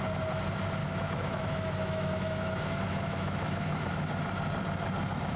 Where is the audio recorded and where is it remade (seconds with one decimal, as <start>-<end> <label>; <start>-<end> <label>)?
0.0-0.8 recorded; 0.8-3.9 remade; 3.9-5.4 recorded